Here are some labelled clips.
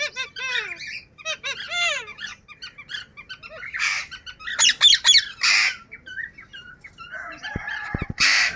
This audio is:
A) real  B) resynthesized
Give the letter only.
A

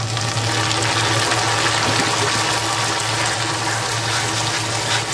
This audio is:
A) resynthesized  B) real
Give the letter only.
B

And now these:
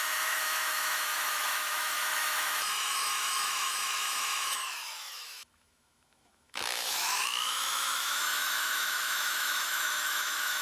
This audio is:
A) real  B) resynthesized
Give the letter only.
B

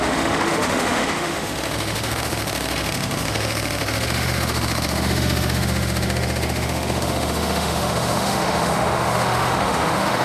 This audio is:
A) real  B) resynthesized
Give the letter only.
B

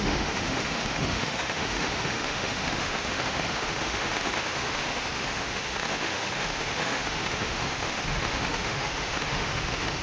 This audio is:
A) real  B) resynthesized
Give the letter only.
B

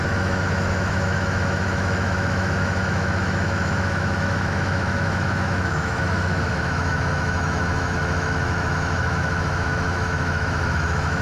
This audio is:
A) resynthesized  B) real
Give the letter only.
A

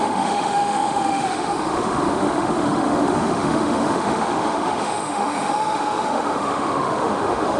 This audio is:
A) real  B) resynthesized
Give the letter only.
B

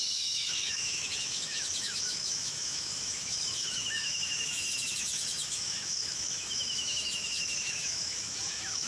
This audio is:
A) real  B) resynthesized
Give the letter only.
B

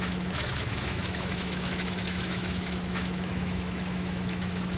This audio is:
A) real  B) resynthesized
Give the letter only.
B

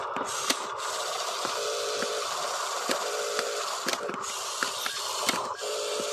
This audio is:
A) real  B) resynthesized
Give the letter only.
A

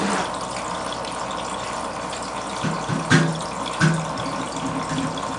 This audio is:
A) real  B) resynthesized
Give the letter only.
A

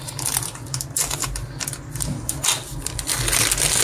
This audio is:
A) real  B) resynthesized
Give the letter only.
A